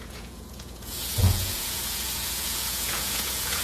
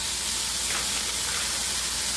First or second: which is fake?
first